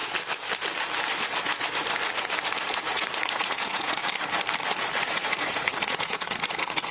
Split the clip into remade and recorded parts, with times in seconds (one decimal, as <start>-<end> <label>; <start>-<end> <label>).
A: 0.0-2.8 recorded; 2.8-4.0 remade; 4.0-5.0 recorded; 5.0-6.9 remade